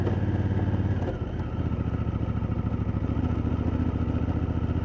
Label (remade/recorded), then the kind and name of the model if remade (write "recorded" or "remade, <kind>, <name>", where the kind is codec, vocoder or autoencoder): recorded